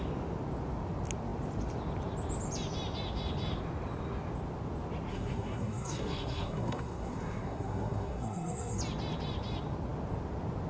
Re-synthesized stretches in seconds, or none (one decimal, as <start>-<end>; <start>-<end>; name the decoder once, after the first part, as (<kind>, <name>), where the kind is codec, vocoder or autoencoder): 5.1-8.8 (codec, SNAC)